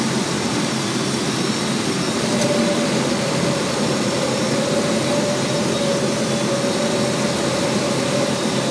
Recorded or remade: recorded